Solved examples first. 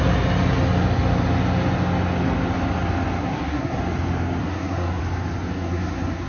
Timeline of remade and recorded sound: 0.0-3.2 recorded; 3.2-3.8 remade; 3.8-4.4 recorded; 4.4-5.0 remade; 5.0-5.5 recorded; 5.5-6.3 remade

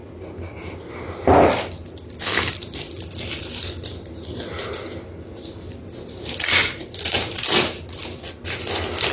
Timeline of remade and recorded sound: 0.0-9.1 recorded

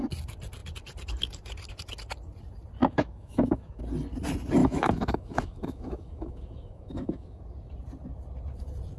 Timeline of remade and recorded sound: 0.0-2.8 recorded; 2.8-3.8 remade; 3.8-4.6 recorded; 4.6-7.4 remade; 7.4-9.0 recorded

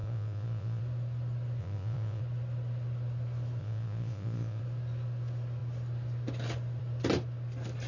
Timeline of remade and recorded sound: 0.0-0.8 remade; 0.8-1.6 recorded; 1.6-2.2 remade; 2.2-3.6 recorded; 3.6-4.6 remade; 4.6-7.9 recorded

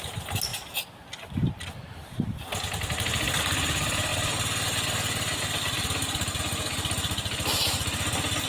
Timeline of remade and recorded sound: 0.0-8.5 recorded

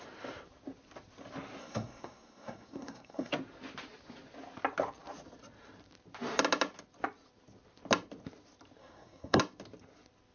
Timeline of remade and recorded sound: 0.0-1.6 recorded; 1.6-3.3 remade; 3.3-8.8 recorded; 8.8-9.4 remade; 9.4-10.3 recorded

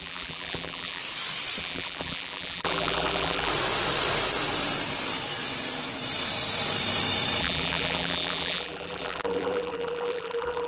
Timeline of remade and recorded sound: 0.0-1.0 remade; 1.0-1.6 recorded; 1.6-3.5 remade; 3.5-7.4 recorded; 7.4-10.7 remade